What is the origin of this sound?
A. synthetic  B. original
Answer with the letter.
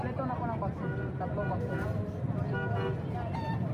B